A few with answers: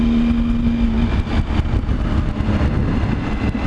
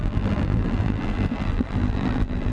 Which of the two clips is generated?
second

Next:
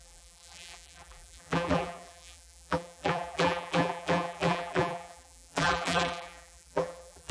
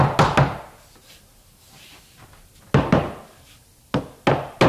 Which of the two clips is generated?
first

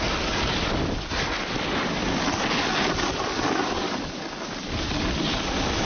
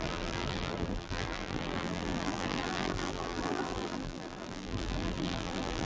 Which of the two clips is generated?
second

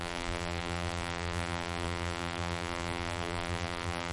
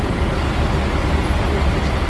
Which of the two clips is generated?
first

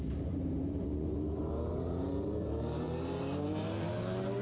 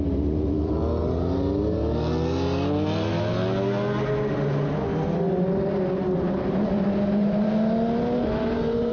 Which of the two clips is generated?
first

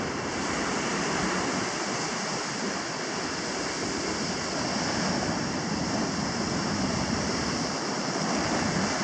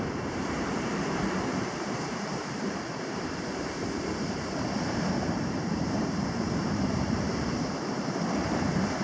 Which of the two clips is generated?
second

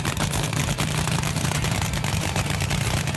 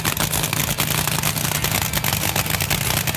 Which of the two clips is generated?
first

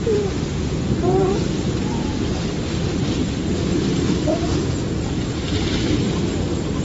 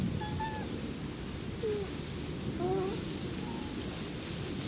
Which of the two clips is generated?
first